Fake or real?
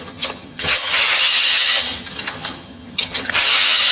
fake